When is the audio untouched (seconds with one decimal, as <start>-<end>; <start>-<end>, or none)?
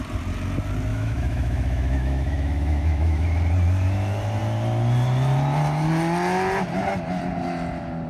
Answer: 0.0-0.9; 3.3-8.1